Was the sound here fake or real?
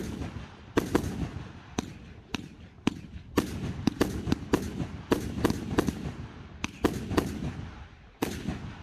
real